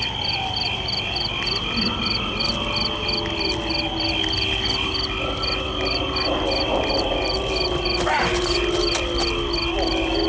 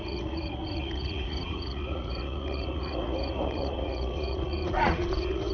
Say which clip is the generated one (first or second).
second